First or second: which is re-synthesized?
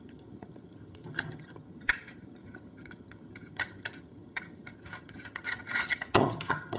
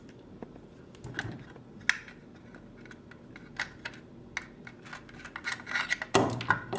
first